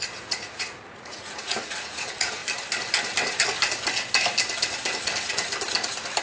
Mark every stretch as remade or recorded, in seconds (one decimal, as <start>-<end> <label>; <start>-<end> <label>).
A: 0.0-2.4 remade; 2.4-6.2 recorded

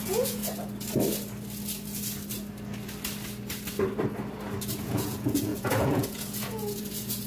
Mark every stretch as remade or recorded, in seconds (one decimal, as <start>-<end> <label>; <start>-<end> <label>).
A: 0.0-0.4 remade; 0.4-4.8 recorded; 4.8-7.3 remade